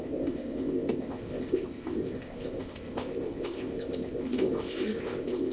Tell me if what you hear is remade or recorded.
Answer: remade